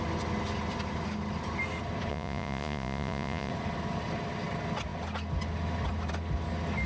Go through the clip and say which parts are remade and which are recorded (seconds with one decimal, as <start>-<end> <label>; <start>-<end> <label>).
0.0-2.1 recorded; 2.1-3.5 remade; 3.5-6.9 recorded